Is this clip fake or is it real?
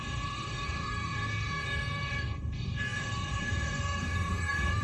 fake